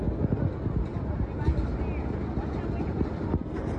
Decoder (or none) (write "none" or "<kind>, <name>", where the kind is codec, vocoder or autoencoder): none